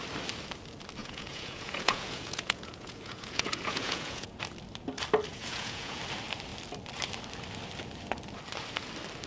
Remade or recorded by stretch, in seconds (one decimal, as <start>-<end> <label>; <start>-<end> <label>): 0.0-1.0 recorded; 1.0-4.4 remade; 4.4-5.3 recorded; 5.3-6.0 remade; 6.0-9.3 recorded